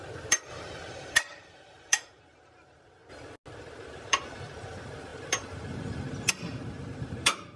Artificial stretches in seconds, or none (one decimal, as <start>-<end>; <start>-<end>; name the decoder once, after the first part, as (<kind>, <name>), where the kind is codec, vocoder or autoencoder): 0.0-3.0 (vocoder, BigVGAN v2); 3.9-7.6